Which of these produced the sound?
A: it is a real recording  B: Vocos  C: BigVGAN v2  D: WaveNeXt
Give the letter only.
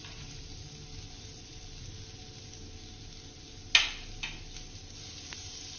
A